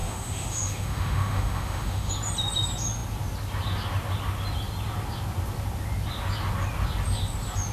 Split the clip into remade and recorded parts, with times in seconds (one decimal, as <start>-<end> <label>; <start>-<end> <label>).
0.0-2.1 remade; 2.1-7.7 recorded